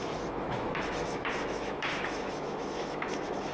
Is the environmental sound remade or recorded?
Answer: remade